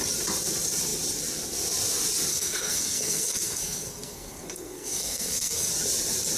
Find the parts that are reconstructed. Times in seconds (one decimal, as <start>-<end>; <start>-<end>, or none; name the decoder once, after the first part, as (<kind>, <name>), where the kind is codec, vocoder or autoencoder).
2.3-5.7 (codec, SNAC)